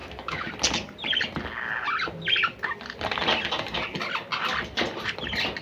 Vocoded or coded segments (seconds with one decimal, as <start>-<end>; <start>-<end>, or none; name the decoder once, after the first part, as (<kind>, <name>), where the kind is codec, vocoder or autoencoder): 0.0-0.5 (autoencoder, DAC-VAE)